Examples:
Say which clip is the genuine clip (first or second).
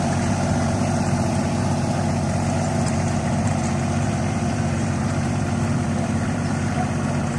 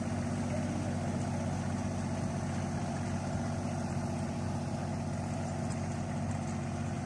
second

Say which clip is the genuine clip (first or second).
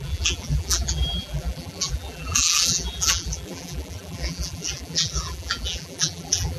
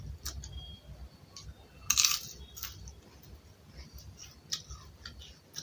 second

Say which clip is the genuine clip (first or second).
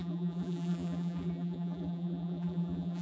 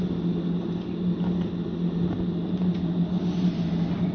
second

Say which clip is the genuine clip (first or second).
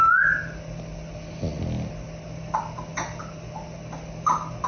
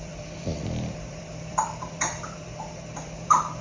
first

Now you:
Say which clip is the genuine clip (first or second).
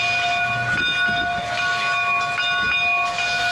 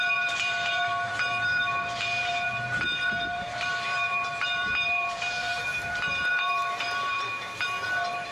first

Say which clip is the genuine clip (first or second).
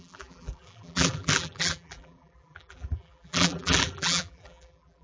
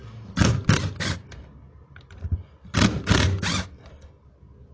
second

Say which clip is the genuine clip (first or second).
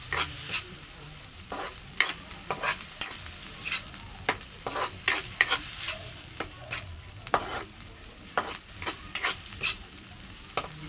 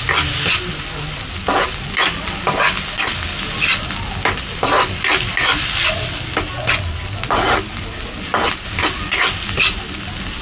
second